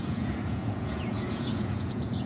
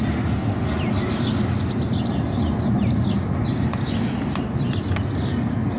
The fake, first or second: first